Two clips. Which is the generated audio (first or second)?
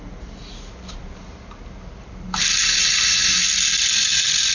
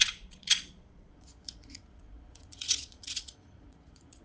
second